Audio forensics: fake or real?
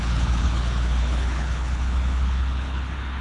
fake